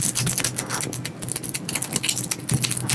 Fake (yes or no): no